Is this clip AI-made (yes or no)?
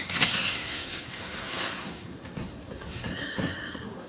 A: yes